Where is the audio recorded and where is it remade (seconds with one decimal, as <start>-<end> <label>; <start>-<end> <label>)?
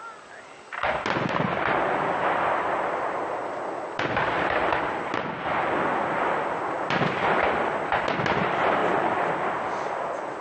0.0-10.4 recorded